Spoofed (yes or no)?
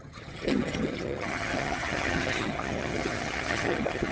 yes